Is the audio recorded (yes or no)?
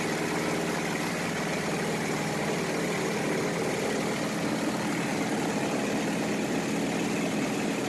yes